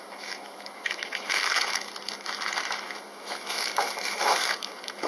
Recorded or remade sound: remade